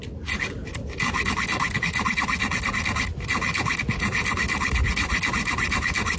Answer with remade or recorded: recorded